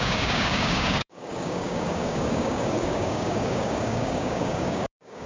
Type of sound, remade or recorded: remade